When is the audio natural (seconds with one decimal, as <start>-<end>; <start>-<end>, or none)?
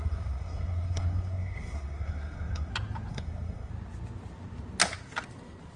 2.7-3.1; 3.7-5.8